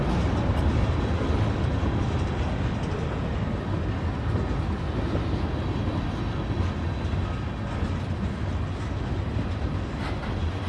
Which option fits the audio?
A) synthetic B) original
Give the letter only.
B